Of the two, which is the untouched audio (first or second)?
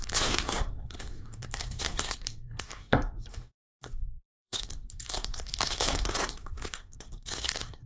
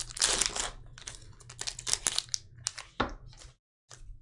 second